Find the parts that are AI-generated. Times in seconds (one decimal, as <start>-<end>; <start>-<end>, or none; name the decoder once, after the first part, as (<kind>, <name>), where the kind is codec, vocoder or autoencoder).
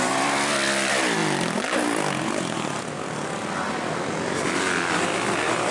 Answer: none